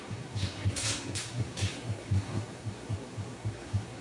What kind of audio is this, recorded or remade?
remade